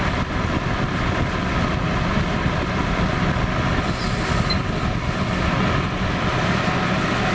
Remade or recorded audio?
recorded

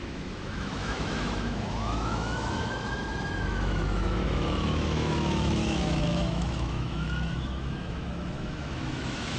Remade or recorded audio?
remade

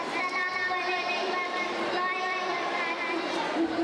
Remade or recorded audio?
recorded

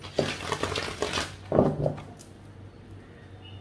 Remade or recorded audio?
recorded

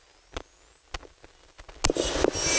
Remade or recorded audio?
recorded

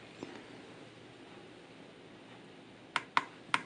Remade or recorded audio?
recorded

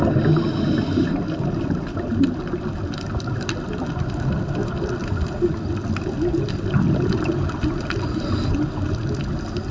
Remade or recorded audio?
recorded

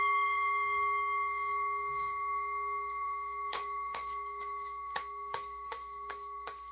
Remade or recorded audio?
remade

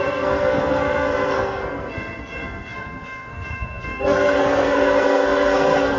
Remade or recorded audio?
remade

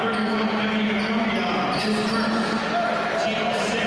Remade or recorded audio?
recorded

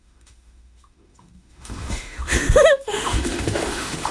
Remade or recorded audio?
remade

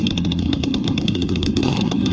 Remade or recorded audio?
remade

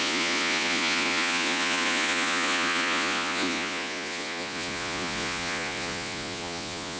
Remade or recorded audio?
remade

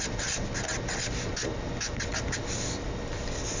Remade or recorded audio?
recorded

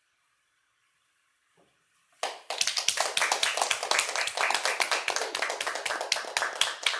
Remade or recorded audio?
recorded